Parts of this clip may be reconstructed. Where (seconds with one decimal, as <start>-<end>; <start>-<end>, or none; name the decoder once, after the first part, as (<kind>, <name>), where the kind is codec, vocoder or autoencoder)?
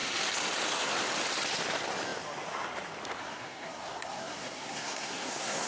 3.2-5.7 (codec, SNAC)